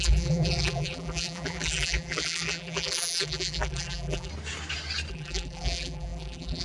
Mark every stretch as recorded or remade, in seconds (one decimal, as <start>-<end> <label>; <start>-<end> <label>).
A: 0.0-4.3 remade; 4.3-5.1 recorded; 5.1-6.6 remade